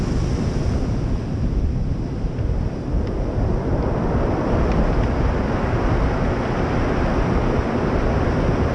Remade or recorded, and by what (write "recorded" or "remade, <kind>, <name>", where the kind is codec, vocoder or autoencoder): recorded